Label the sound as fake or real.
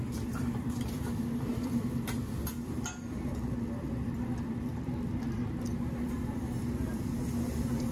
fake